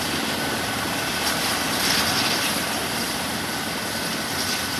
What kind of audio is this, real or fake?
real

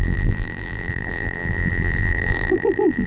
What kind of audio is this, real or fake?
fake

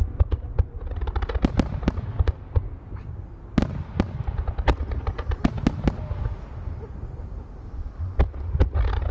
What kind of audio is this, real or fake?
real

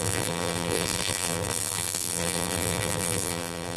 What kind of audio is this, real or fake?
fake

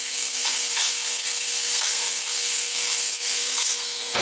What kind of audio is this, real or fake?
fake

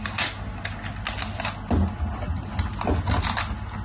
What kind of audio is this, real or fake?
real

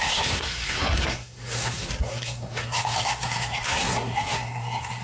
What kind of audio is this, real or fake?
fake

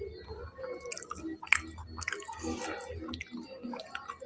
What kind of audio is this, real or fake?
real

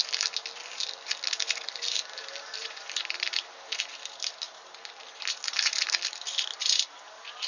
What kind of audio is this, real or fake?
real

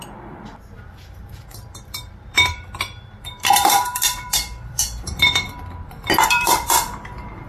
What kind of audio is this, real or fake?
fake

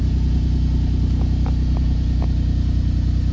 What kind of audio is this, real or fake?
real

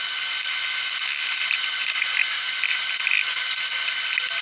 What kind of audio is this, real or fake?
real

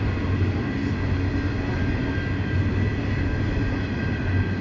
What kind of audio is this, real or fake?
real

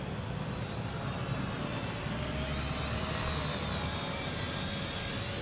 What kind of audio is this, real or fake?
real